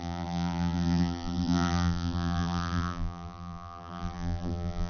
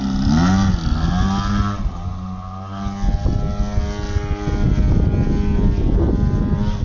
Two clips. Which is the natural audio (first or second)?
second